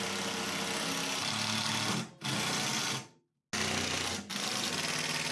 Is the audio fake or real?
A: real